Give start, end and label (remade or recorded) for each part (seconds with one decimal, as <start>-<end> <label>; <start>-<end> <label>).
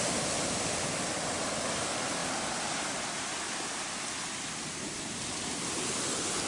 0.0-2.2 recorded; 2.2-3.6 remade; 3.6-6.5 recorded